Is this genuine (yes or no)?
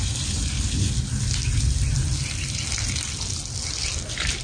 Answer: yes